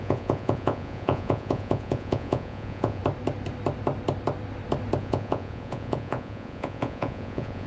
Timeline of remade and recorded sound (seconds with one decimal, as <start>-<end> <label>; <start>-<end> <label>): 0.0-3.0 remade; 3.0-5.0 recorded; 5.0-7.7 remade